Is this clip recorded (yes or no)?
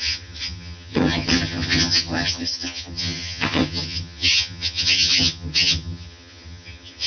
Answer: no